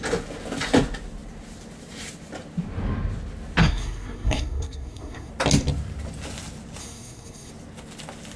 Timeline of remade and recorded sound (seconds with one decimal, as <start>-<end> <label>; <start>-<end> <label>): 0.0-3.6 recorded; 3.6-5.3 remade; 5.3-6.8 recorded; 6.8-7.5 remade; 7.5-8.4 recorded